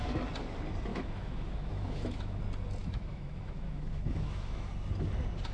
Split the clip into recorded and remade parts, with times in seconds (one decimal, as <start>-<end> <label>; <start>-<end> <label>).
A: 0.0-0.9 recorded; 0.9-2.4 remade; 2.4-2.8 recorded; 2.8-4.7 remade; 4.7-5.5 recorded